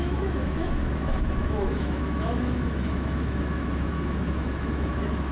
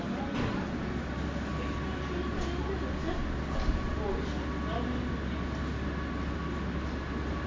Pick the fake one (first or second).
first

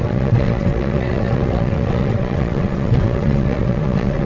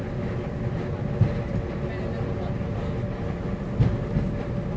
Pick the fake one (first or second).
first